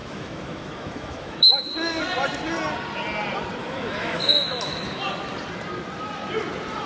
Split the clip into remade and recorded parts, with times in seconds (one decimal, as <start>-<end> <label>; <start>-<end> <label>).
0.0-1.7 remade; 1.7-3.6 recorded; 3.6-5.0 remade; 5.0-6.9 recorded